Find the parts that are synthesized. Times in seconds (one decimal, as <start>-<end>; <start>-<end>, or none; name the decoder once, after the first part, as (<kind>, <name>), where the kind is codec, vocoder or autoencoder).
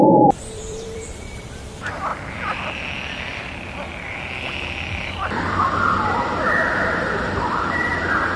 0.0-6.1 (vocoder, BigVGAN v2); 7.0-8.4